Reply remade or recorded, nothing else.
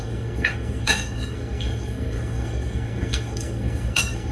remade